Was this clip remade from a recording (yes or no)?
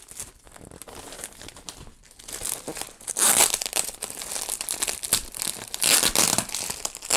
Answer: no